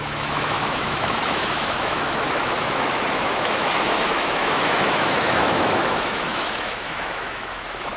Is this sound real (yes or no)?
no